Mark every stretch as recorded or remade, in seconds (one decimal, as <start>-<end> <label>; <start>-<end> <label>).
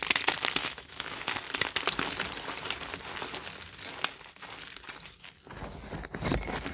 0.0-0.6 recorded; 0.6-1.2 remade; 1.2-6.7 recorded